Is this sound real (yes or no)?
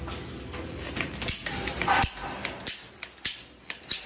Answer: yes